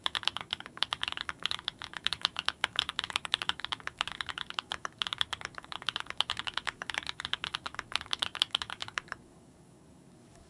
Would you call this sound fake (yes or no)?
yes